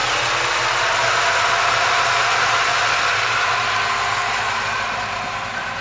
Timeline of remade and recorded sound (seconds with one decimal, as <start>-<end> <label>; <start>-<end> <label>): 0.0-5.8 recorded